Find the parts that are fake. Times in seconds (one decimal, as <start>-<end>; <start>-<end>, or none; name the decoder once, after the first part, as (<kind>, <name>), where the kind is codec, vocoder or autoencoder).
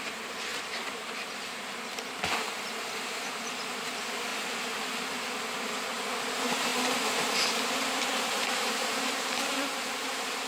0.0-4.3 (vocoder, BigVGAN v2); 6.2-10.5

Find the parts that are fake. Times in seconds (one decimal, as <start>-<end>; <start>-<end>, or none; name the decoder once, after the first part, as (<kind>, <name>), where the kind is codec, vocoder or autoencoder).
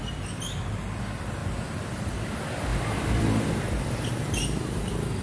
2.7-4.1 (vocoder, BigVGAN v2)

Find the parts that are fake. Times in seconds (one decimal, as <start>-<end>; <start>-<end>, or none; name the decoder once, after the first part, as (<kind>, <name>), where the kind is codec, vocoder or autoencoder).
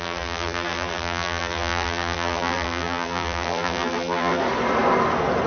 0.0-4.4 (vocoder, BigVGAN v2)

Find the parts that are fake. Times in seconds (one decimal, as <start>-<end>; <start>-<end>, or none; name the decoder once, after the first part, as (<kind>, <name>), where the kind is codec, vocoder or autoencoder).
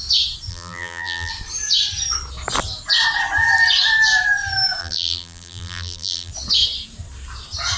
0.5-1.3 (vocoder, BigVGAN v2); 4.8-6.3